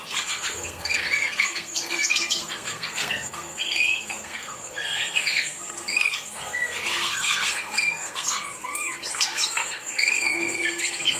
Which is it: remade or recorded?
remade